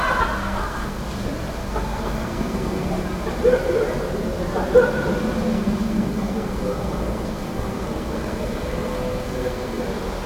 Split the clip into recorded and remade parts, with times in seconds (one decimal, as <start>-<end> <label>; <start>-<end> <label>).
0.0-0.4 recorded; 0.4-1.0 remade; 1.0-1.6 recorded; 1.6-2.9 remade; 2.9-5.5 recorded; 5.5-9.8 remade; 9.8-10.3 recorded